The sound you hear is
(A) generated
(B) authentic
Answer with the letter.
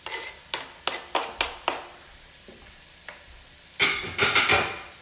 B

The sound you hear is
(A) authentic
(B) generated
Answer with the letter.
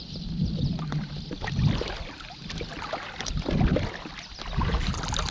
A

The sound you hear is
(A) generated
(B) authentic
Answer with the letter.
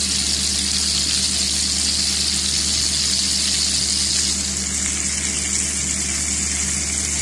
B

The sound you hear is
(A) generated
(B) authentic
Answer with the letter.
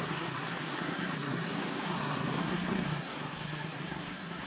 A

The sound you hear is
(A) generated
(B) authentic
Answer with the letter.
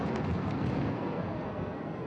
A